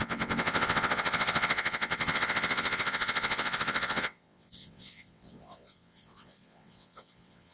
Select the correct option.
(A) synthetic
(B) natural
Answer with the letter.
A